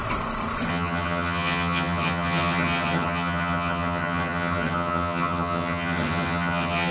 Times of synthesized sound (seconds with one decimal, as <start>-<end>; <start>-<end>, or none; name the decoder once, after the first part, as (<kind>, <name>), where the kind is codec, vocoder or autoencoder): 0.7-6.9 (vocoder, HiFi-GAN)

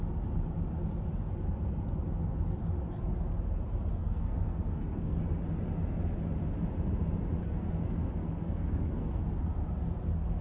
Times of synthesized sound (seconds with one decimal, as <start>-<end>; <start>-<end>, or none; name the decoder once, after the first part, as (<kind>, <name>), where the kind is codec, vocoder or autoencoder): 3.9-5.2 (codec, SNAC); 7.4-9.2

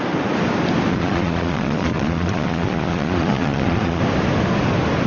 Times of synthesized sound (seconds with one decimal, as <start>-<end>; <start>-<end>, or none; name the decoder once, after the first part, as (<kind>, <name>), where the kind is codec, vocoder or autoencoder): 0.9-4.0 (vocoder, Vocos)

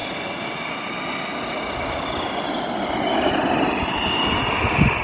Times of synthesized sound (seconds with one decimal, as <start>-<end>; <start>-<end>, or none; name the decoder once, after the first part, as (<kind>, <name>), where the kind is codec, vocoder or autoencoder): none

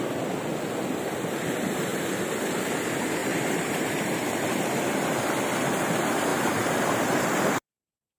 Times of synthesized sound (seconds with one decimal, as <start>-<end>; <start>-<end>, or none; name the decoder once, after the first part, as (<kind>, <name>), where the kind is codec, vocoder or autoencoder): 3.2-4.8 (vocoder, BigVGAN v2); 6.3-8.2

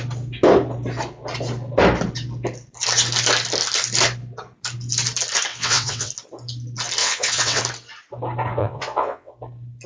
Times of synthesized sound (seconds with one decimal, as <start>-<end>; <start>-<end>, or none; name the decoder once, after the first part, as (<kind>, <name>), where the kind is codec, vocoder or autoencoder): 5.5-6.1 (vocoder, WaveNeXt); 7.0-7.6; 8.6-9.3

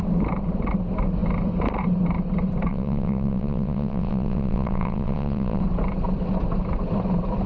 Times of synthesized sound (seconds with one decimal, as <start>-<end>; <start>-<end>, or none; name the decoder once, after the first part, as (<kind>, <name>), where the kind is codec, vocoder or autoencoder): 2.7-5.6 (vocoder, WaveNeXt)